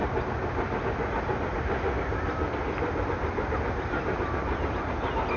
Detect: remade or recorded recorded